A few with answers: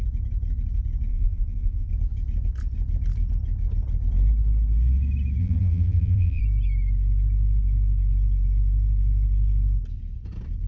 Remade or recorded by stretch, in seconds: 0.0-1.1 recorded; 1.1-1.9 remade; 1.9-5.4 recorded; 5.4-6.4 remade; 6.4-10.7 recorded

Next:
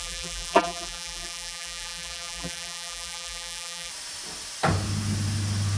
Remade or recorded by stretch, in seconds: 0.0-3.9 remade; 3.9-5.8 recorded

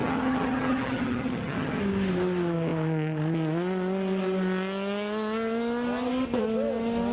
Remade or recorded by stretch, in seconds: 0.0-1.8 remade; 1.8-7.1 recorded

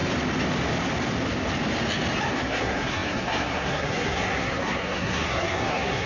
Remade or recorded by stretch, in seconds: 0.0-2.3 recorded; 2.3-6.1 remade

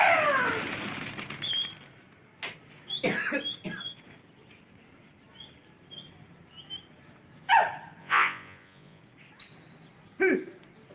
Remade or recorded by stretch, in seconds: 0.0-8.0 recorded; 8.0-9.0 remade; 9.0-10.9 recorded